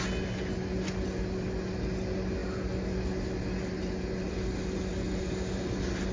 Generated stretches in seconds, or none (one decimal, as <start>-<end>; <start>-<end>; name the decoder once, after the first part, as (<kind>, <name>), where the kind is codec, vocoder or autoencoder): none